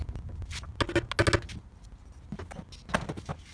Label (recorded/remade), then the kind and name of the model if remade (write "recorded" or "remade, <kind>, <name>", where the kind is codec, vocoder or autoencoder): recorded